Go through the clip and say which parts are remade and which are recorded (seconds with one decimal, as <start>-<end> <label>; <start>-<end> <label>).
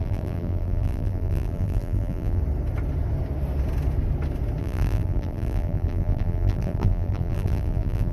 0.0-2.4 remade; 2.4-4.6 recorded; 4.6-8.1 remade